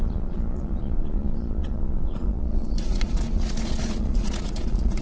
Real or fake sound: fake